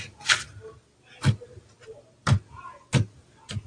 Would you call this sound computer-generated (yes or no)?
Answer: no